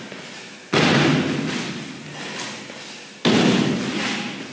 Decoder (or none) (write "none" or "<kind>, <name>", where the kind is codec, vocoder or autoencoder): none